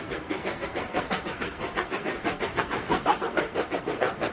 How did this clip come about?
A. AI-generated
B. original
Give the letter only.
A